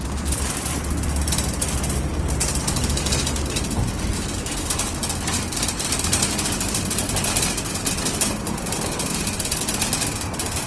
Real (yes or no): yes